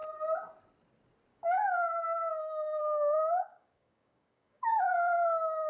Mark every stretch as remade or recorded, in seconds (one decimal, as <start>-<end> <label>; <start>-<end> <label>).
0.0-1.3 recorded; 1.3-4.7 remade; 4.7-5.7 recorded